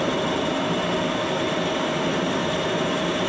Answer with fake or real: real